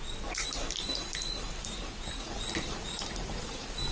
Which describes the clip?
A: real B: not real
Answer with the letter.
A